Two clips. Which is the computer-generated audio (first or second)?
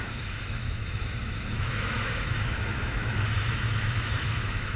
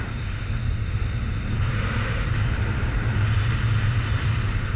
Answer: first